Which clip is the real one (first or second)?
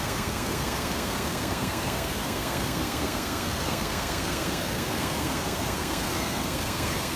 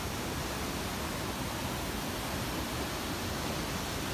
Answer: second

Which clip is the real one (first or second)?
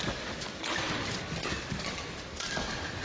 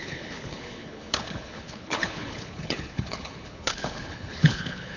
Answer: first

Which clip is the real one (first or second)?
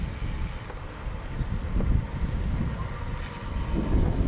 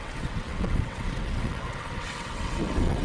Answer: first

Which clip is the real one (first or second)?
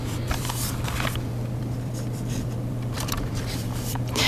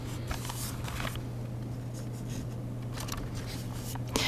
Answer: second